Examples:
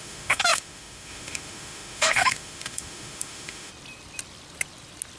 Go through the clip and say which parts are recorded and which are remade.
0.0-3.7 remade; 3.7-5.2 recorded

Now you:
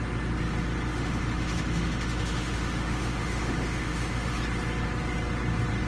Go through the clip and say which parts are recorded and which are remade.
0.0-0.9 recorded; 0.9-4.4 remade; 4.4-5.9 recorded